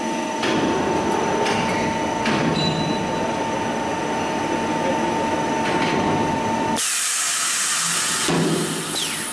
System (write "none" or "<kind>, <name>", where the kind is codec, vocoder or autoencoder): none